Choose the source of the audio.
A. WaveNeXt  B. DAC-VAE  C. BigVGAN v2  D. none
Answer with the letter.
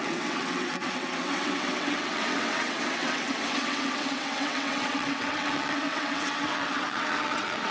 A